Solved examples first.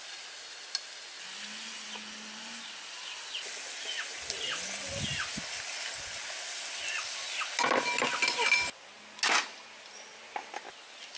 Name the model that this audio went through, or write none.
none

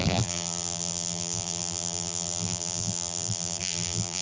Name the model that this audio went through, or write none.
vocoder, BigVGAN v2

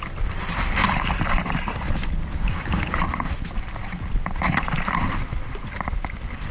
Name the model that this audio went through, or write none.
none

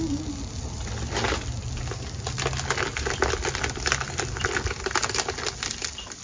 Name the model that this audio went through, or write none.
none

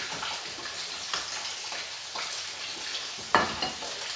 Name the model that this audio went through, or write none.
none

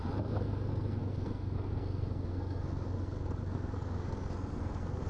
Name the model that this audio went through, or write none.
codec, SNAC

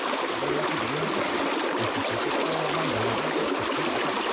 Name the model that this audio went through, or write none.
none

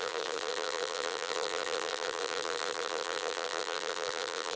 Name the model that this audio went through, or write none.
vocoder, BigVGAN v2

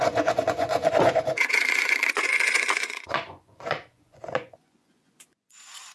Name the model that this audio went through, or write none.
vocoder, Vocos